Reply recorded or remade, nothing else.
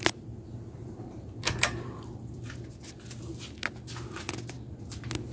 recorded